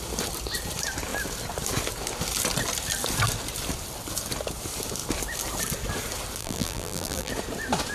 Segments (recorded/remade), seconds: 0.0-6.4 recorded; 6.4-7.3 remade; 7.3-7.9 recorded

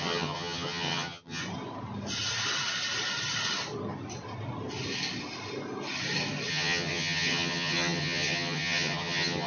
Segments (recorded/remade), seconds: 0.0-1.4 remade; 1.4-6.5 recorded; 6.5-9.5 remade

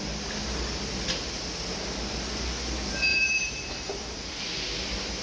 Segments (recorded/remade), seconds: 0.0-3.1 recorded; 3.1-4.4 remade; 4.4-5.2 recorded

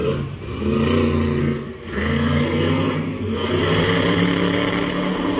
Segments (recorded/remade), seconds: 0.0-1.4 recorded; 1.4-3.5 remade; 3.5-5.4 recorded

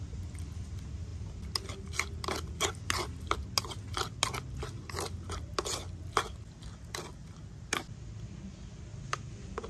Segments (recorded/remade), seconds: 0.0-9.7 recorded